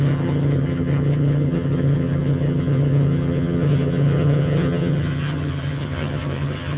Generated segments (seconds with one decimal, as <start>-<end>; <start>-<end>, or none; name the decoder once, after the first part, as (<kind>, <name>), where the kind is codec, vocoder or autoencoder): 0.0-6.8 (vocoder, HiFi-GAN)